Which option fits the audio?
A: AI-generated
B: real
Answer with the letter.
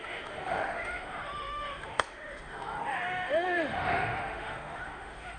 A